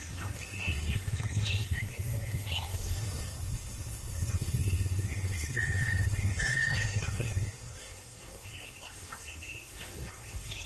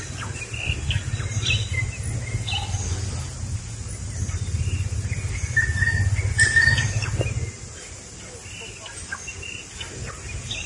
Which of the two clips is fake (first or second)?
first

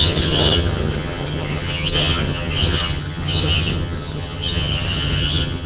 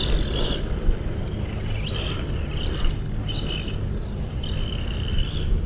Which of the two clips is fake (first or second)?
first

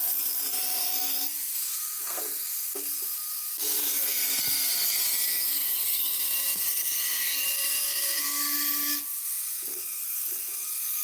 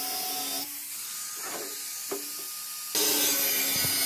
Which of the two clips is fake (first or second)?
first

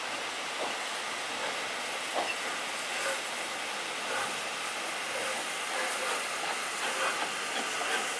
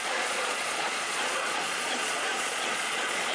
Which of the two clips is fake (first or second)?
second